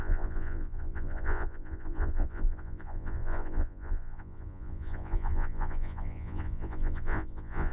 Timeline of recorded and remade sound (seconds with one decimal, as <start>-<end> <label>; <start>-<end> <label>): 0.0-7.7 remade